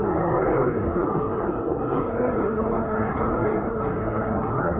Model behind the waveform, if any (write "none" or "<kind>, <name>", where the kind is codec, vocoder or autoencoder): codec, SNAC